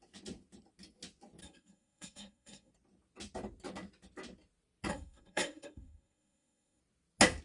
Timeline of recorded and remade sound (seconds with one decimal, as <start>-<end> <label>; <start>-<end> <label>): 0.0-1.4 recorded; 1.4-2.7 remade; 2.7-4.9 recorded; 4.9-6.8 remade; 6.8-7.4 recorded